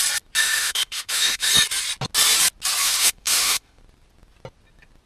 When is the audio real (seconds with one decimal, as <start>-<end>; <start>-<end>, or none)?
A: 0.0-0.4; 1.5-2.8; 3.8-5.1